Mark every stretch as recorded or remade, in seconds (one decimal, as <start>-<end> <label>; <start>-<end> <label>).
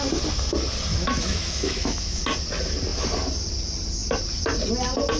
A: 0.0-0.9 recorded; 0.9-2.2 remade; 2.2-5.2 recorded